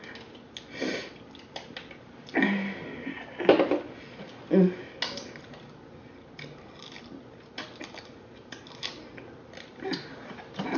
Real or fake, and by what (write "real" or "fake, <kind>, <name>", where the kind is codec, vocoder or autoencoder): real